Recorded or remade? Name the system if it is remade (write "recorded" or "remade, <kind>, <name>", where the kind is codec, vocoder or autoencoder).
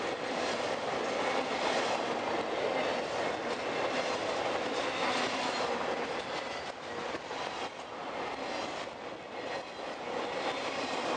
recorded